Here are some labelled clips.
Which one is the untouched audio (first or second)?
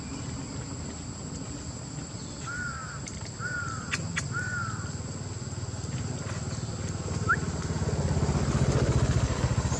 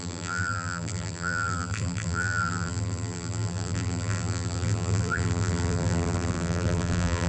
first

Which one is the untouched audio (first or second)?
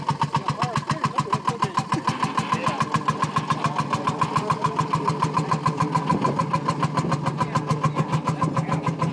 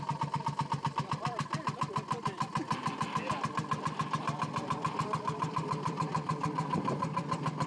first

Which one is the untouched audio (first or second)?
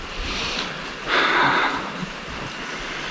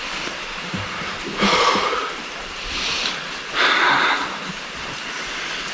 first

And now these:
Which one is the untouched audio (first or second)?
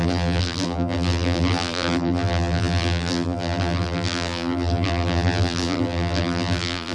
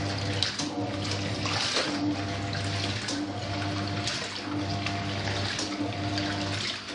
second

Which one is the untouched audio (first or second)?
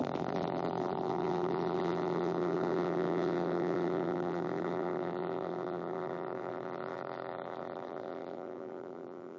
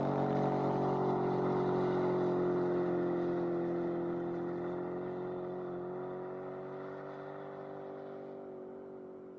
second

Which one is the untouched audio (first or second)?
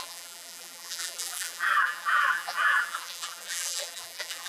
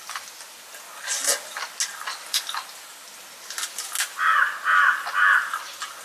second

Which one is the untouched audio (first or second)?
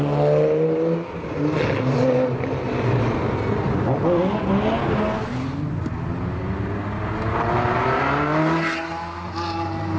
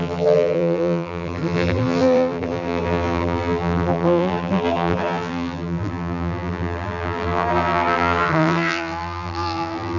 first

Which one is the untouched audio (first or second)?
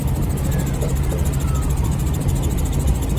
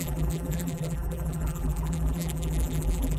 first